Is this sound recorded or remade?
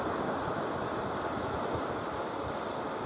recorded